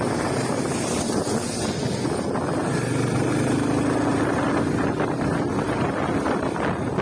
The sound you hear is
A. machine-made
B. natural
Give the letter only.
B